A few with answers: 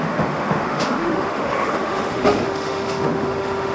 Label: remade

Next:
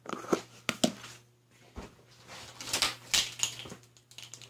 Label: recorded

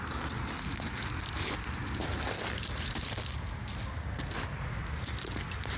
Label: recorded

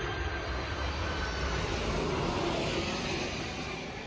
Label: recorded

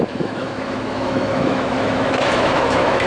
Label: remade